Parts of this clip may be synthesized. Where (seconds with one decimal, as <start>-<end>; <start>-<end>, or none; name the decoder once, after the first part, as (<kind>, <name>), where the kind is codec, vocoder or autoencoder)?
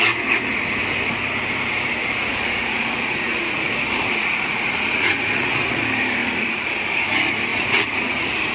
2.0-5.8 (vocoder, Vocos); 6.2-6.7; 7.5-8.5